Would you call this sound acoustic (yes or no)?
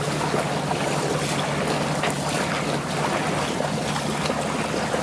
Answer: yes